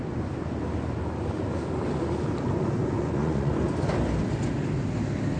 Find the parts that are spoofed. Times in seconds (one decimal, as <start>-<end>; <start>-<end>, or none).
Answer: 2.8-3.5